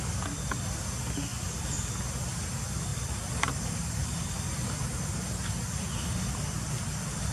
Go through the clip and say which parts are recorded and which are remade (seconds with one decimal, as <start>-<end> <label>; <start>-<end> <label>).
0.0-7.3 recorded